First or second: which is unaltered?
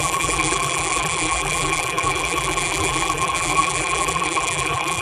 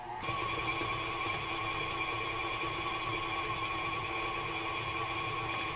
second